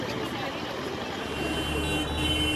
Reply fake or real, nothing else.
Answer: real